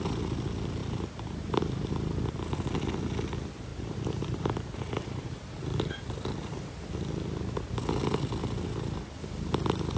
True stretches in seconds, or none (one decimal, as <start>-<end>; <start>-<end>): 0.0-0.8; 1.6-3.7; 6.0-10.0